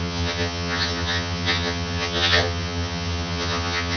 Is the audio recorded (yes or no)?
no